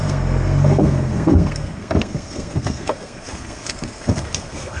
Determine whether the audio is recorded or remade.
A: remade